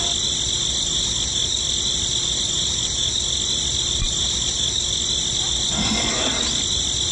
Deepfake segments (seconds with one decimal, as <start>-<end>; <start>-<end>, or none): none